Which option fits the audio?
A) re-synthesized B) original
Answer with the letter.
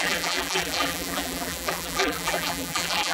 A